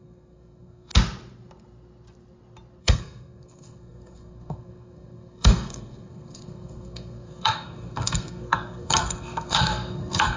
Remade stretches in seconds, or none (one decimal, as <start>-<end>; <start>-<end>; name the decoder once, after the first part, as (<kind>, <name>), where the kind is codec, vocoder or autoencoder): 0.0-0.9 (codec, SNAC); 2.8-10.4